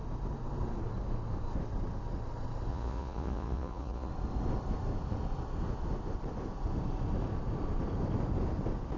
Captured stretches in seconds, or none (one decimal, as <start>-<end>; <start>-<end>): 0.0-2.7; 4.1-9.0